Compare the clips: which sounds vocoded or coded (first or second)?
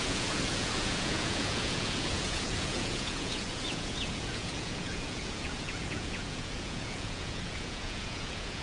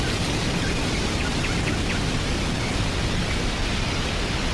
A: first